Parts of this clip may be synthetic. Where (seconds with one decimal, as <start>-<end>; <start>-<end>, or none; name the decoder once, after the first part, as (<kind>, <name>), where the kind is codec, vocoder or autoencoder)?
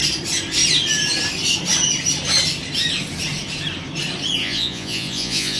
4.4-5.6 (vocoder, Vocos)